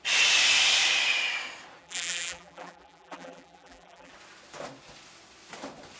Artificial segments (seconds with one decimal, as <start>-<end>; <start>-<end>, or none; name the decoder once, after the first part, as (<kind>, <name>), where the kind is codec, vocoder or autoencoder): 1.8-4.1 (vocoder, BigVGAN v2)